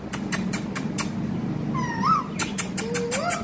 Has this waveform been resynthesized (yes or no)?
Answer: no